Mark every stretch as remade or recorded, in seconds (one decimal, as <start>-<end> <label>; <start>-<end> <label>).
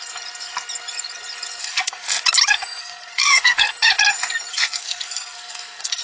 0.0-1.6 recorded; 1.6-2.2 remade; 2.2-2.8 recorded; 2.8-3.7 remade; 3.7-4.5 recorded; 4.5-6.0 remade